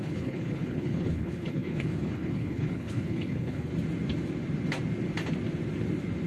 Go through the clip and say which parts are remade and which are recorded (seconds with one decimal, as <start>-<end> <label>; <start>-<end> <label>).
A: 0.0-3.7 remade; 3.7-6.3 recorded